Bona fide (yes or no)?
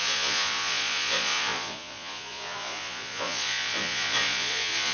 no